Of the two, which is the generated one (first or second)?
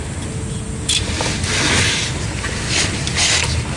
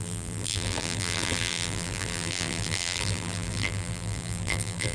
second